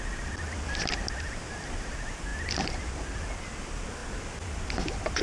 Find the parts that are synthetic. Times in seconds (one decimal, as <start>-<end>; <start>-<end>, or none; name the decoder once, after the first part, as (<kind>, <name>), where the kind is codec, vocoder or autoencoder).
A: none

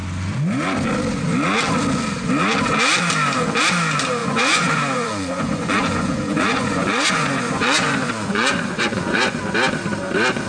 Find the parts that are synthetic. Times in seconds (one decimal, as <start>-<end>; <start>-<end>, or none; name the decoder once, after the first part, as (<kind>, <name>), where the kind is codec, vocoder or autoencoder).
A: 4.2-9.4 (vocoder, Vocos)